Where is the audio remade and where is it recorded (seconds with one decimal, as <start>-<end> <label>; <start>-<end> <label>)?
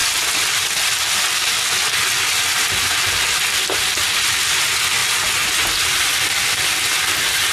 0.0-7.5 recorded